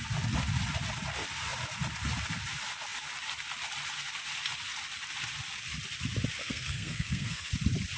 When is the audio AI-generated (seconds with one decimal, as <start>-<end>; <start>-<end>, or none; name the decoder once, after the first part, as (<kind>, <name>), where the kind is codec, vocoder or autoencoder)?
6.4-7.5 (codec, SNAC)